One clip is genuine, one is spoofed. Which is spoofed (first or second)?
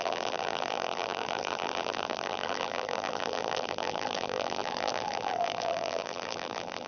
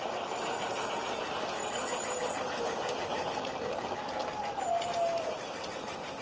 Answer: first